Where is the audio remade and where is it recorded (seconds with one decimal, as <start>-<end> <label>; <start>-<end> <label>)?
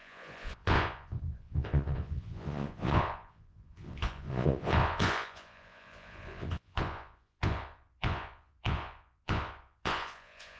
0.0-10.6 remade